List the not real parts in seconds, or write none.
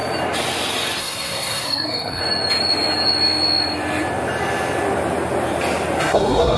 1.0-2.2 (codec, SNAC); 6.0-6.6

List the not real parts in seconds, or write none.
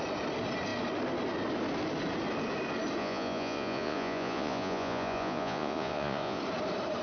3.0-6.4 (vocoder, Vocos)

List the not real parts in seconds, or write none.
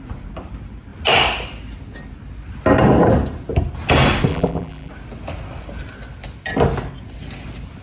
4.3-4.9 (vocoder, BigVGAN v2)